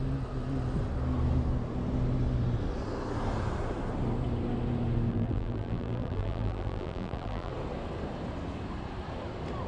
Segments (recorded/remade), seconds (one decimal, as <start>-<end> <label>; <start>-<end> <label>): 0.0-5.1 recorded; 5.1-7.5 remade; 7.5-9.7 recorded